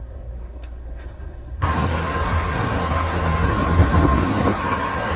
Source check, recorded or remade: remade